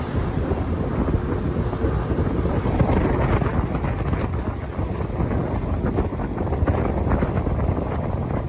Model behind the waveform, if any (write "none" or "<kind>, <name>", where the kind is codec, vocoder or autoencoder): none